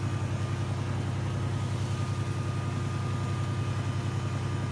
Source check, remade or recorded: recorded